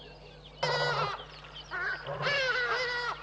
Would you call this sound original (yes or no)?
yes